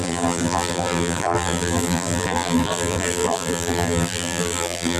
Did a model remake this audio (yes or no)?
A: yes